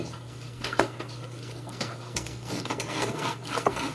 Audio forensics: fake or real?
fake